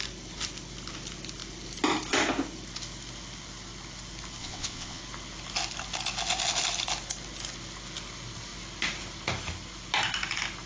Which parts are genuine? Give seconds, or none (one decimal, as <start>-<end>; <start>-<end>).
0.0-4.4; 5.0-10.7